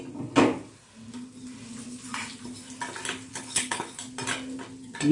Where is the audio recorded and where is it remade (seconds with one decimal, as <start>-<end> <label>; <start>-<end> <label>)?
0.0-3.3 recorded; 3.3-3.9 remade; 3.9-5.1 recorded